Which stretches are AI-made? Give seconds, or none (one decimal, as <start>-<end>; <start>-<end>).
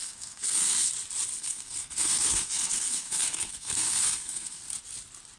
0.0-0.9; 1.4-4.6